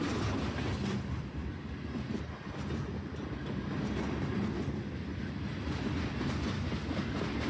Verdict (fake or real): real